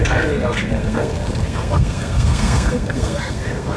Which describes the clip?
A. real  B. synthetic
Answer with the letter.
B